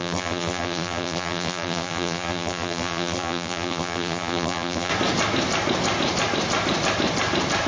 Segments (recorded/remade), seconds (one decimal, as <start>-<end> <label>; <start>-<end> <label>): 0.0-4.9 remade; 4.9-7.7 recorded